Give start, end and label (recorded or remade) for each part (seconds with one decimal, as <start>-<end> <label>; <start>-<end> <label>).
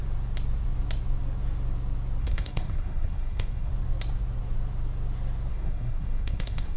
0.0-2.2 recorded; 2.2-3.7 remade; 3.7-5.5 recorded; 5.5-6.8 remade